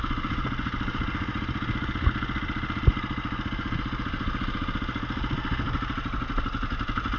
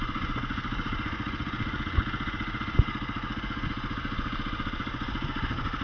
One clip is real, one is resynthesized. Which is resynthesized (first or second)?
second